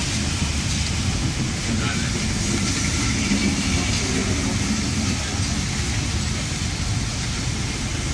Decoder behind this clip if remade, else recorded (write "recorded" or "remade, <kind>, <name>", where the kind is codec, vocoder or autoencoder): recorded